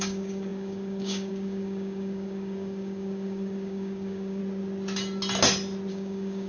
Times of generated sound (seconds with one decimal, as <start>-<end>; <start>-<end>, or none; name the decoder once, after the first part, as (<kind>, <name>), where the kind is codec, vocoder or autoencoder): 0.0-4.4 (codec, DAC); 5.9-6.5

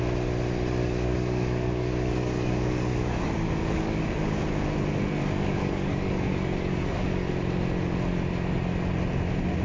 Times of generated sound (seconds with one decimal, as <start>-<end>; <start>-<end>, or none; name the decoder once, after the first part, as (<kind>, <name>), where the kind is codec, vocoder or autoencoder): 0.8-4.4 (codec, DAC); 5.2-7.3

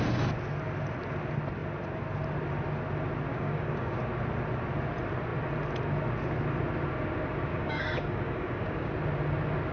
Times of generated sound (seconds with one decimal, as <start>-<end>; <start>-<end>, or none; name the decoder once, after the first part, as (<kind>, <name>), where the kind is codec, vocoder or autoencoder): 3.3-4.0 (codec, DAC); 7.5-8.9

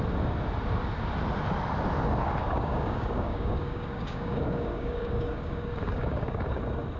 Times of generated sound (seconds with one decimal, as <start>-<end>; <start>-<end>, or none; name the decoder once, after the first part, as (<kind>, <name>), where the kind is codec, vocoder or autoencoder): 2.4-6.6 (codec, DAC)

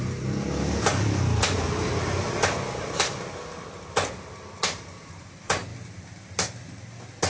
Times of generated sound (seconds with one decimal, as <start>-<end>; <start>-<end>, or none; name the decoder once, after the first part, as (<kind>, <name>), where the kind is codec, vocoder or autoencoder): none